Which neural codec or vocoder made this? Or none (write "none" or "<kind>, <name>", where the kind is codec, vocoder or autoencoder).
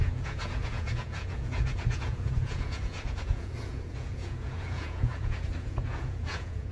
vocoder, Vocos